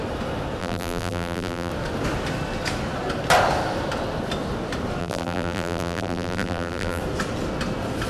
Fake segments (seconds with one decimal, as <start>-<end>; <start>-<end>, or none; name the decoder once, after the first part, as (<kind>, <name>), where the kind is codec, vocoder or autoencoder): 0.6-1.7 (vocoder, BigVGAN v2); 5.0-7.0